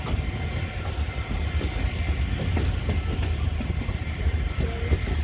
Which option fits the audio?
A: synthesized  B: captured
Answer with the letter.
B